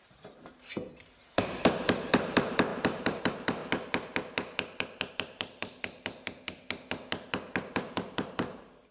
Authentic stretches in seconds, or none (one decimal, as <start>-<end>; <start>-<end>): 3.6-5.1; 6.6-7.7